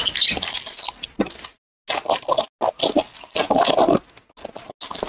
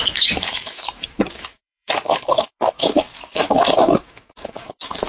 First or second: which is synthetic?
second